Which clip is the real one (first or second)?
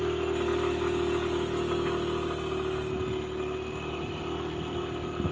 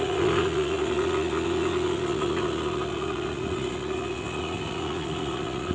first